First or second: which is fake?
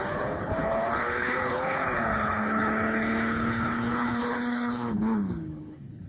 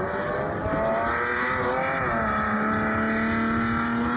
first